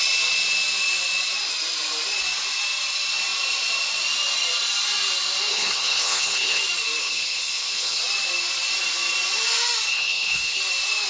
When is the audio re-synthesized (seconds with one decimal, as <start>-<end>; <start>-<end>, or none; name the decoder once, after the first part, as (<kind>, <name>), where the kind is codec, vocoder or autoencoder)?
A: 5.5-6.6 (codec, HILCodec); 7.0-8.0; 9.9-10.6